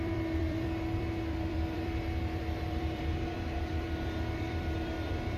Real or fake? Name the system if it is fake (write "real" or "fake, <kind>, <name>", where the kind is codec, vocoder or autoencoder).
fake, vocoder, BigVGAN v2